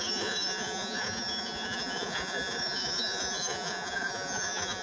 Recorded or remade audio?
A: remade